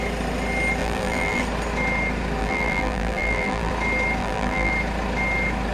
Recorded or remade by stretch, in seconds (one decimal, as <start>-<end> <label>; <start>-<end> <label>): 0.0-0.8 recorded; 0.8-1.4 remade; 1.4-2.4 recorded; 2.4-3.7 remade; 3.7-4.2 recorded; 4.2-4.7 remade; 4.7-5.7 recorded